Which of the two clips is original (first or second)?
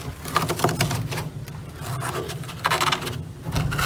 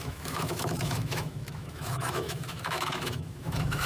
first